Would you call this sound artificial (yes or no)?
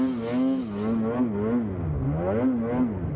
no